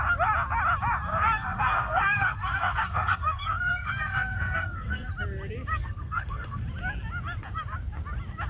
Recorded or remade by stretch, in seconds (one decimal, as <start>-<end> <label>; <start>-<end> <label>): 0.0-1.1 recorded; 1.1-5.1 remade; 5.1-5.7 recorded; 5.7-6.6 remade; 6.6-8.5 recorded